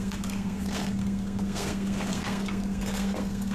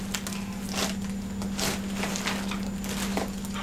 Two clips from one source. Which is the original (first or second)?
second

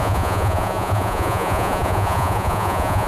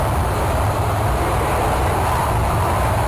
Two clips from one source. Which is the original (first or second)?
second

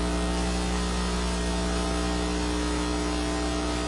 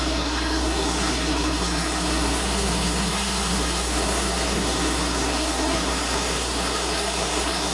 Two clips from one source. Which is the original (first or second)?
first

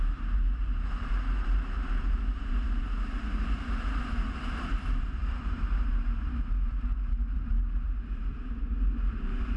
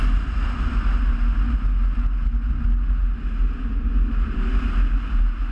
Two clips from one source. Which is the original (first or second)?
second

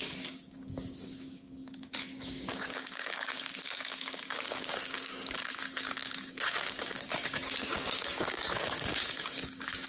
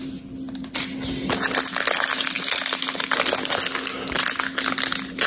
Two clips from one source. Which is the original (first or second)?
second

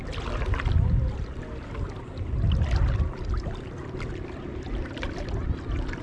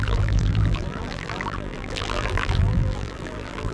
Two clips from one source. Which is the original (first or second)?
first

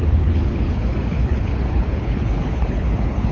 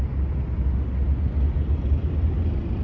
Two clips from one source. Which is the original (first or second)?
second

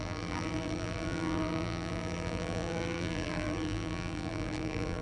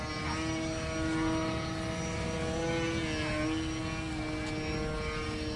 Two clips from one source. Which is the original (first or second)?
second